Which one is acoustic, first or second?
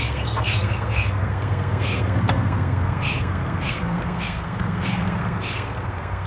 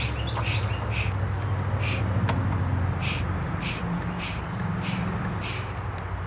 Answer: second